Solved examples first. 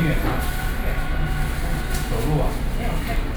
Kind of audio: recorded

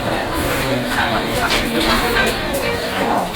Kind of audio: remade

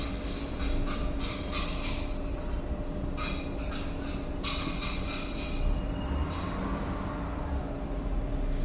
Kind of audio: recorded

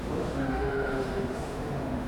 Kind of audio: remade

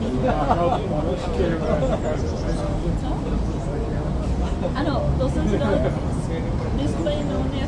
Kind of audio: recorded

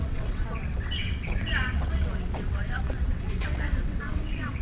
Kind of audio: remade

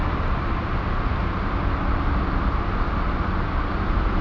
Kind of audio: recorded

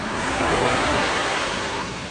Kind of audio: remade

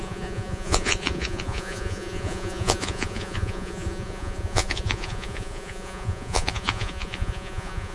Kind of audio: remade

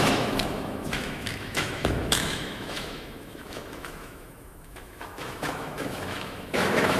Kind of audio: remade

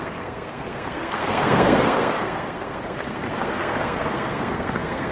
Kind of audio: remade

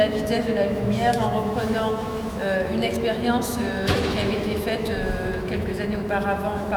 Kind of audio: remade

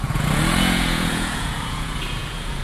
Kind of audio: remade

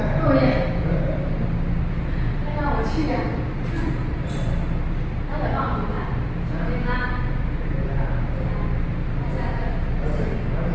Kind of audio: recorded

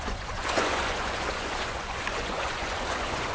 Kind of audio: remade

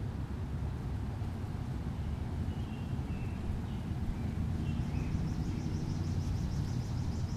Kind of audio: recorded